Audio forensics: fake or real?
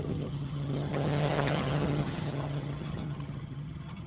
fake